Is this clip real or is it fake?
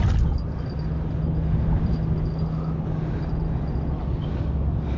real